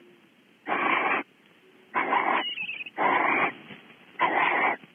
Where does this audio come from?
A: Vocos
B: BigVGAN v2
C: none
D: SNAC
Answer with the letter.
C